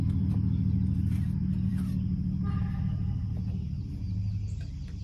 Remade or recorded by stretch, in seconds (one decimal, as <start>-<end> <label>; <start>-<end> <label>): 0.0-5.0 recorded